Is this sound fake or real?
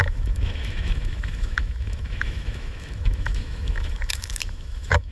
fake